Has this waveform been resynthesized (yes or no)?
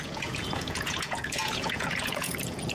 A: yes